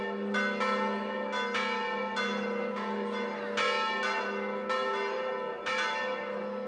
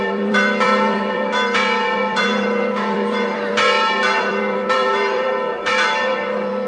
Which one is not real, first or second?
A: second